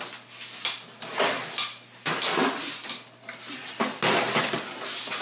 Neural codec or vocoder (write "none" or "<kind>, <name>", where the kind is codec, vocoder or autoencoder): none